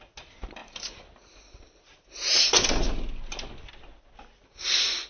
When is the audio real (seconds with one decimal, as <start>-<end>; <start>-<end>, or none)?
0.0-5.1